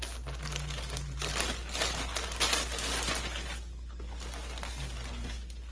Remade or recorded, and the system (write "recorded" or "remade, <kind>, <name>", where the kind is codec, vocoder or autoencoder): recorded